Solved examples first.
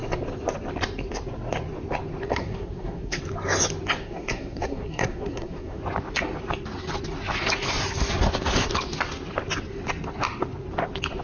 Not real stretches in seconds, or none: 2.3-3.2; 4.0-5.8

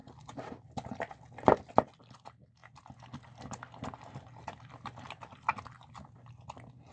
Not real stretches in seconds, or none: none

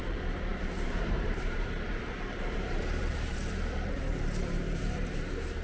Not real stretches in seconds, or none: 0.0-5.6

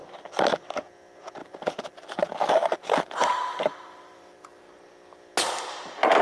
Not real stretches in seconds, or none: 1.4-4.7

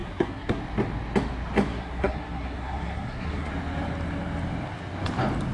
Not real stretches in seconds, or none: 0.0-0.6; 1.7-3.5